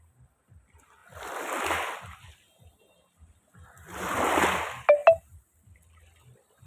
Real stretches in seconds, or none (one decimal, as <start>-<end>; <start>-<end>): 0.0-6.7